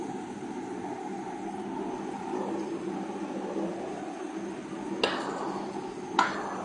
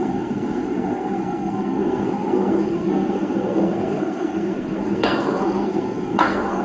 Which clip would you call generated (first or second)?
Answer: second